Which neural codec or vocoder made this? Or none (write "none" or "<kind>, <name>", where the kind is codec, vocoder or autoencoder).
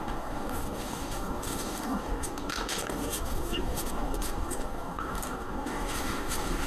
codec, DAC